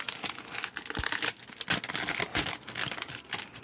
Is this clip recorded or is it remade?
recorded